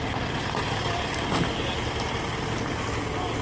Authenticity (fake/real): real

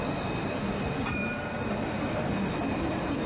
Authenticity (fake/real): real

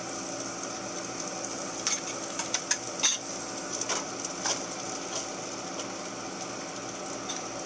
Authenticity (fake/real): real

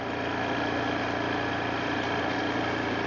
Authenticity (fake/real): real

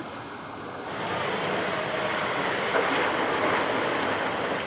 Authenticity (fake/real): real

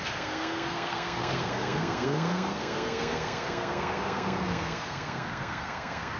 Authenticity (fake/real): fake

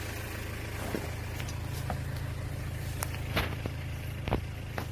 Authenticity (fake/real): real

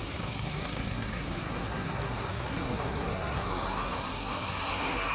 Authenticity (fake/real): fake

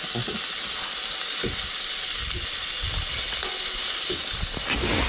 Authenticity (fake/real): real